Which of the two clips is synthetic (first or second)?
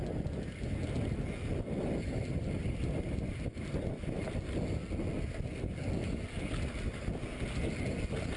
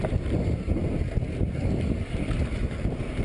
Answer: second